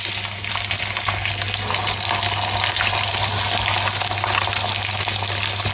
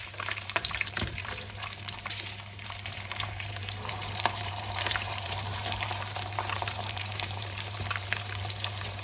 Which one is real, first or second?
first